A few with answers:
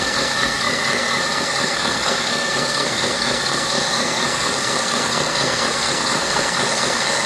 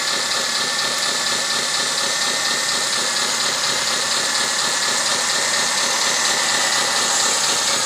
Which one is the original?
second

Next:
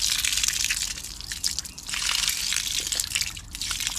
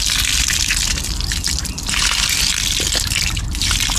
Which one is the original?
first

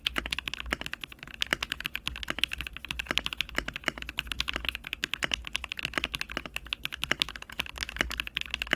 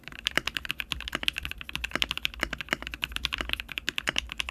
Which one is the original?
first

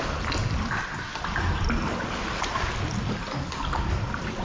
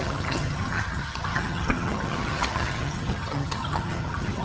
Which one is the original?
first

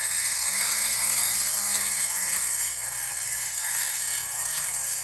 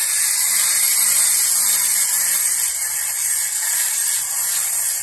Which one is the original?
second